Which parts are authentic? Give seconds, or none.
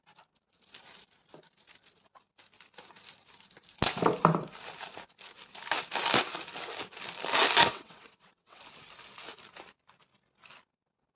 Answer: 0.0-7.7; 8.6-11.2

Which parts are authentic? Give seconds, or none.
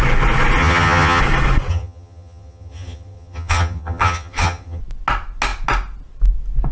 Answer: 0.0-0.6; 1.2-1.7; 4.8-6.7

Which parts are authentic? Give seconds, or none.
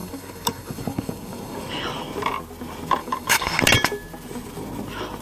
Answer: 1.7-3.0; 3.6-5.2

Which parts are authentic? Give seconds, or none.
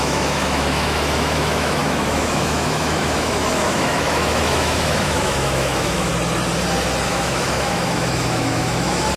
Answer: 6.1-7.1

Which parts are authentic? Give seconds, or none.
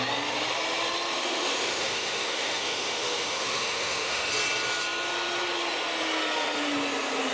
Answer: 0.0-1.1; 4.3-7.3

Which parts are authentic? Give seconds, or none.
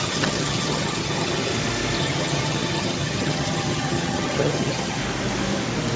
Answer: 1.5-2.0; 5.0-6.0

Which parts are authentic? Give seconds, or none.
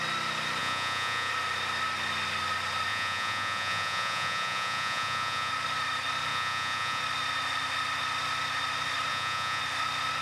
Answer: 0.0-0.6; 1.3-2.9; 5.5-6.3; 7.0-9.1; 9.6-10.2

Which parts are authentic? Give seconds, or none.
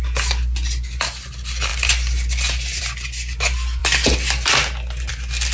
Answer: 0.0-5.5